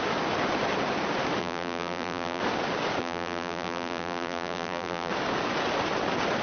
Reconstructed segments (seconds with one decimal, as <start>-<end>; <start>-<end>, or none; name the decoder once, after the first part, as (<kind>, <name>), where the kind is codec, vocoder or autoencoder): 1.4-2.4 (vocoder, BigVGAN v2); 3.0-5.1

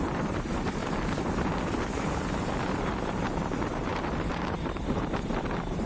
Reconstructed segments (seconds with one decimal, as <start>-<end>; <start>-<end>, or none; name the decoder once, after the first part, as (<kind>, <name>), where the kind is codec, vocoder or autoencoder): 0.0-5.9 (vocoder, BigVGAN v2)

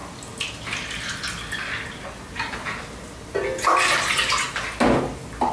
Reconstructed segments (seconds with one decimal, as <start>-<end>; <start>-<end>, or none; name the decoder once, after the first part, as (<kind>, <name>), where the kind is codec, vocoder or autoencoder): none

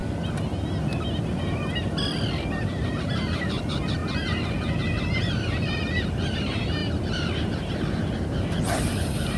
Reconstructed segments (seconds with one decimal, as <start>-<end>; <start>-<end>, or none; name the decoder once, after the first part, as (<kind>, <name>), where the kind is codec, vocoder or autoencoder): 2.5-4.0 (vocoder, BigVGAN v2); 5.2-6.8; 7.4-9.4

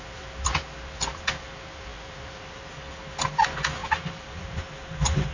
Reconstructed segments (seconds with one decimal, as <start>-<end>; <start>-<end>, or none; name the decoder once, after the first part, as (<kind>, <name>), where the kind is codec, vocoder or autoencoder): none

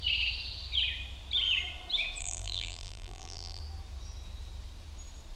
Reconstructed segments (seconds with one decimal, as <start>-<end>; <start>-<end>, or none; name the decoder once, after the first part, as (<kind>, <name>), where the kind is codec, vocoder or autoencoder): 2.2-3.6 (vocoder, BigVGAN v2)

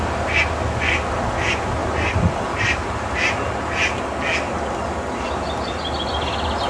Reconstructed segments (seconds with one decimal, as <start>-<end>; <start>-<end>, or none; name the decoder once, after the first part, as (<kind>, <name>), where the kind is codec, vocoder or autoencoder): 1.8-4.0 (vocoder, BigVGAN v2)

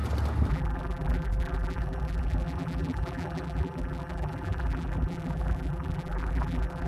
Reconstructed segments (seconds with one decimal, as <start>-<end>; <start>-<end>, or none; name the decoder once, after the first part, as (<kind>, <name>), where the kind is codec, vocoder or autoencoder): 0.5-6.9 (vocoder, BigVGAN v2)